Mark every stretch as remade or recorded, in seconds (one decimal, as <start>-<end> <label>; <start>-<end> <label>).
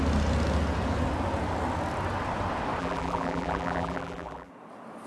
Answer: 0.0-2.8 recorded; 2.8-4.5 remade; 4.5-5.1 recorded